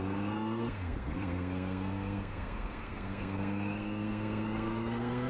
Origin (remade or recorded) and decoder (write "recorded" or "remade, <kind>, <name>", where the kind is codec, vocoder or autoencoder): remade, codec, SNAC